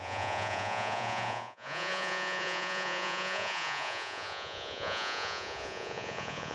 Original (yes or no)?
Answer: no